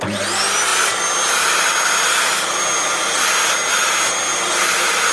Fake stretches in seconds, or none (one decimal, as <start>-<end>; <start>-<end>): none